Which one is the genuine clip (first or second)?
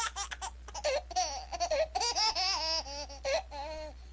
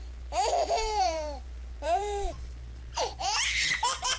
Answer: first